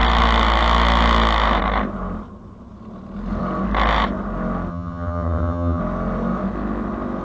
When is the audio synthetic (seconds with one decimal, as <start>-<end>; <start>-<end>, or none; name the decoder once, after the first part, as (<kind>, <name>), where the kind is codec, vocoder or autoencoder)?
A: 4.7-5.8 (vocoder, HiFi-GAN)

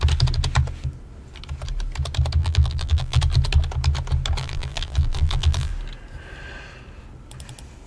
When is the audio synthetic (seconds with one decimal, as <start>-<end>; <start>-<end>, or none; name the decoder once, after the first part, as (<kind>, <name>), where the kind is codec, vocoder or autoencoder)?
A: 2.4-3.2 (vocoder, BigVGAN v2); 4.4-5.7

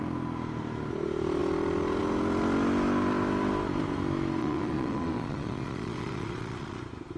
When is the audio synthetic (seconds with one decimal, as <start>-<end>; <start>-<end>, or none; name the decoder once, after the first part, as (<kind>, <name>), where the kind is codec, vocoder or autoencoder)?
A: 4.4-6.8 (vocoder, Vocos)

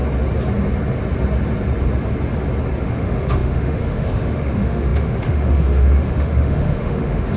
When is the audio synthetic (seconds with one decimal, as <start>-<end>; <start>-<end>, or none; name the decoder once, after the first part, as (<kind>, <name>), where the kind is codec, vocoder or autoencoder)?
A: 2.8-7.4 (autoencoder, DAC-VAE)